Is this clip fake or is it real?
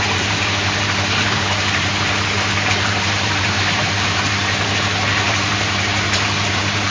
fake